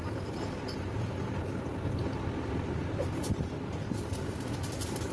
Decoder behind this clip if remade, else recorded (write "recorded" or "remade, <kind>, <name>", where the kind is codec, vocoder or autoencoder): recorded